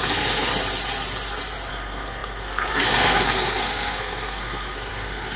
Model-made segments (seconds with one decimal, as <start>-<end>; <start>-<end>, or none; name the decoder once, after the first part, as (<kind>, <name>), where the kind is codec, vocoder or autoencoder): 0.0-0.5 (codec, SNAC); 1.7-5.4